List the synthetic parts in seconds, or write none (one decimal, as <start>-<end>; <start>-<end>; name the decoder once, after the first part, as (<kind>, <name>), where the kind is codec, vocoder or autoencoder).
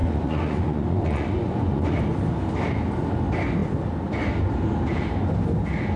0.0-2.0 (vocoder, Vocos)